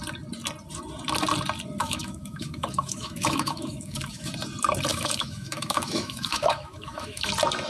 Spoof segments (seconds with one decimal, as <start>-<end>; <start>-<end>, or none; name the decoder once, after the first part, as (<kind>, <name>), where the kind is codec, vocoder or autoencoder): 1.8-4.3 (autoencoder, DAC-VAE); 4.9-7.3